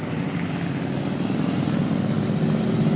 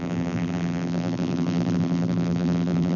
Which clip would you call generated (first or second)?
second